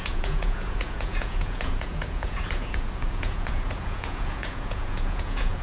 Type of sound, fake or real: fake